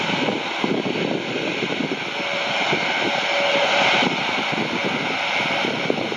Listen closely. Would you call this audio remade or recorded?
recorded